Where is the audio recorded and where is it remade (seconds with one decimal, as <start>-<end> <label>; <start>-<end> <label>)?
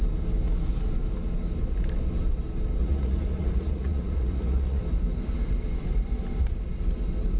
0.0-2.8 recorded; 2.8-4.8 remade; 4.8-7.4 recorded